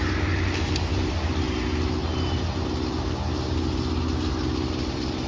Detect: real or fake real